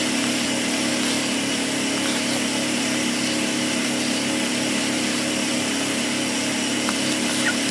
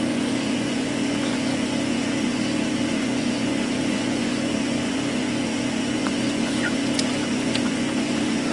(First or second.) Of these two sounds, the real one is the first